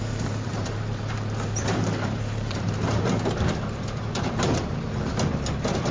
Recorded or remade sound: remade